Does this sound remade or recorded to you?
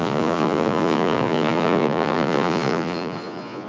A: remade